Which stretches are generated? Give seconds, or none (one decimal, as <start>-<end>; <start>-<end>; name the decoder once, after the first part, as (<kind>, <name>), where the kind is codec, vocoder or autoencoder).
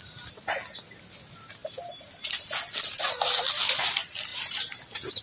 none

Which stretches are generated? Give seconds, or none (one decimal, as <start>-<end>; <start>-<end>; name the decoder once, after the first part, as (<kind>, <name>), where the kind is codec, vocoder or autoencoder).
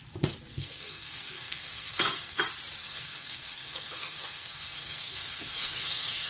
0.5-2.4 (codec, SNAC); 2.8-6.3